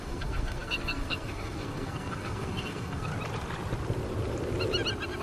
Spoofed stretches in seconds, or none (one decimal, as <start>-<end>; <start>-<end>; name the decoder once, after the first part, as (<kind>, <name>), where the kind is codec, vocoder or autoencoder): 0.0-3.1 (codec, SNAC)

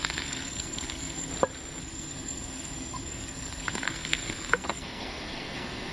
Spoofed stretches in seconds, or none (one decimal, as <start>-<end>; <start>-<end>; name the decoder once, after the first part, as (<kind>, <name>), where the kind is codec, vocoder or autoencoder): 0.0-1.3 (codec, SNAC); 1.8-5.9

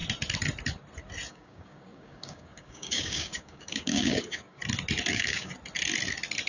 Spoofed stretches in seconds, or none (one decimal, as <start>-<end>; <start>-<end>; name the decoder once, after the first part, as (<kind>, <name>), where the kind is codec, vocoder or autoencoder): 1.3-4.6 (codec, DAC); 5.1-5.5

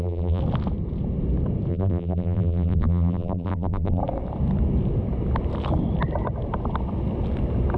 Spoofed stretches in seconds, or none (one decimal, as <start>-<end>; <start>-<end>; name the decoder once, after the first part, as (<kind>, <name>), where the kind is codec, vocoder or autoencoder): 0.0-0.4 (vocoder, BigVGAN v2); 1.7-4.0

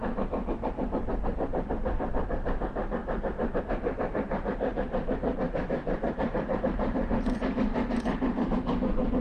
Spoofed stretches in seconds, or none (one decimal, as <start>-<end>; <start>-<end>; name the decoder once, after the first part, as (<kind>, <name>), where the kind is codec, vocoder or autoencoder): 3.0-3.6 (vocoder, BigVGAN v2); 5.8-6.6; 7.7-8.5